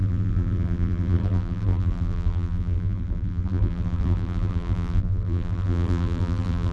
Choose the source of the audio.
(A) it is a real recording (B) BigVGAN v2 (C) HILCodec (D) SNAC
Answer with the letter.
B